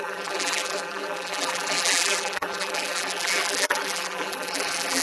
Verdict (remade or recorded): remade